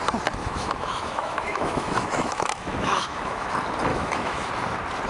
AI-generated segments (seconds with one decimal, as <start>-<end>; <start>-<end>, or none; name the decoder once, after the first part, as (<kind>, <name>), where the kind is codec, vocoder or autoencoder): 0.4-3.5 (autoencoder, DAC-VAE); 3.9-4.5